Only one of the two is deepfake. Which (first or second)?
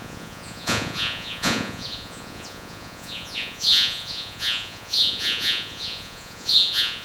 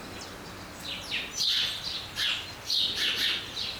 first